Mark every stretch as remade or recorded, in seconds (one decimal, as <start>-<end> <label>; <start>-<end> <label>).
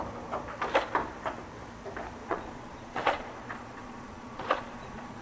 0.0-2.2 recorded; 2.2-5.2 remade